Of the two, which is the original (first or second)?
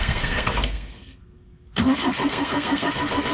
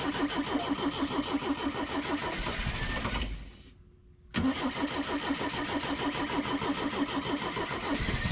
second